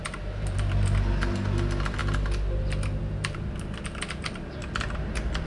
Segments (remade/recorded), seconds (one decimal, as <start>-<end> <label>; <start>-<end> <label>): 0.0-5.5 recorded